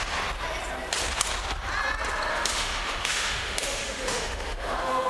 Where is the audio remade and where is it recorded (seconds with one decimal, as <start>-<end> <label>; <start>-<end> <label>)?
0.0-2.3 recorded; 2.3-5.1 remade